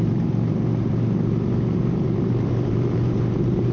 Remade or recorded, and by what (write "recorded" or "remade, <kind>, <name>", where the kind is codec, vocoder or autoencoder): remade, vocoder, BigVGAN v2